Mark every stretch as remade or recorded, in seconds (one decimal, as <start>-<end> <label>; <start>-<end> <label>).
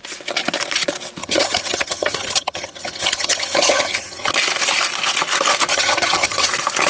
0.0-1.2 recorded; 1.2-4.3 remade; 4.3-5.7 recorded; 5.7-6.5 remade; 6.5-6.9 recorded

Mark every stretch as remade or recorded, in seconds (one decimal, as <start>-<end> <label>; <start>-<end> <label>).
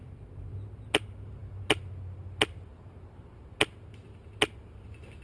0.0-5.2 recorded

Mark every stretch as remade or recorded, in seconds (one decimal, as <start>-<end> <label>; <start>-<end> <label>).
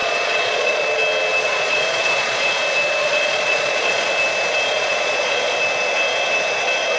0.0-0.8 remade; 0.8-1.4 recorded; 1.4-2.5 remade; 2.5-3.0 recorded; 3.0-4.1 remade; 4.1-4.7 recorded; 4.7-5.5 remade; 5.5-7.0 recorded